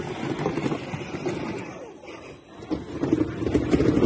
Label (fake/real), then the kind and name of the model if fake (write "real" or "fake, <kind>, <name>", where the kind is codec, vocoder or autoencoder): real